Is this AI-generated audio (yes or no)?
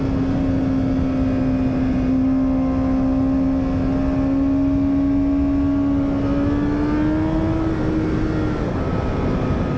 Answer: no